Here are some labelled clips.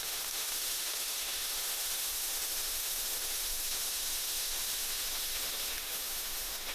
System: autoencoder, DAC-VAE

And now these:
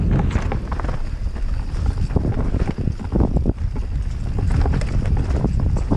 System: none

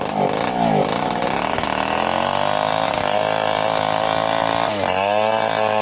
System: none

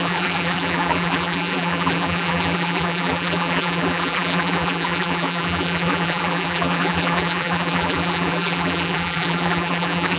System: vocoder, BigVGAN v2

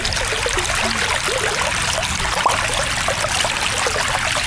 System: none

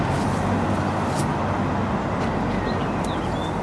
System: none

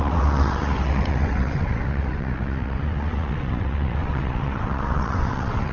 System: vocoder, WaveNeXt